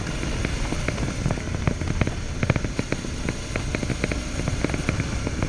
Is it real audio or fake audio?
real